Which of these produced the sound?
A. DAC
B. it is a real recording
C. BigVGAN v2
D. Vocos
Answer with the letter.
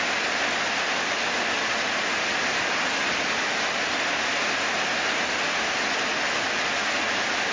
B